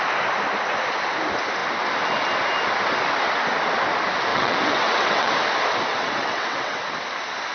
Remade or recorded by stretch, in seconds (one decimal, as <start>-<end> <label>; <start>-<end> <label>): 0.0-4.3 recorded; 4.3-5.3 remade; 5.3-5.9 recorded; 5.9-6.8 remade; 6.8-7.5 recorded